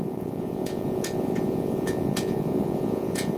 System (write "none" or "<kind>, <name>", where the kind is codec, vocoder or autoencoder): vocoder, Vocos